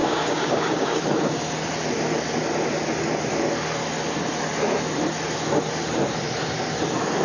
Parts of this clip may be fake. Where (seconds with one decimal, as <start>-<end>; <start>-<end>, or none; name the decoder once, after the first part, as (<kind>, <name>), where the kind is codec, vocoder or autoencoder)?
0.0-1.0 (codec, DAC)